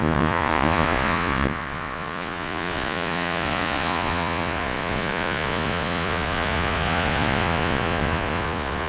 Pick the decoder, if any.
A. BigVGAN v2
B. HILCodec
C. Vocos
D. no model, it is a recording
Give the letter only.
C